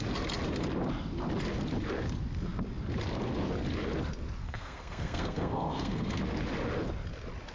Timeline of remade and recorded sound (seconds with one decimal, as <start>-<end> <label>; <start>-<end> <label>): 0.0-4.4 recorded; 4.4-6.2 remade; 6.2-7.5 recorded